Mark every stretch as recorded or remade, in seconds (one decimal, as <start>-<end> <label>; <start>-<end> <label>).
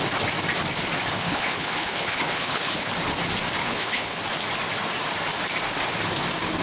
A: 0.0-1.2 recorded; 1.2-2.9 remade; 2.9-3.6 recorded; 3.6-4.2 remade; 4.2-6.6 recorded